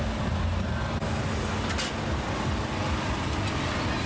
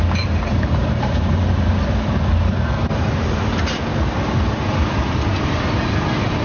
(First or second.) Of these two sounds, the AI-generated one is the second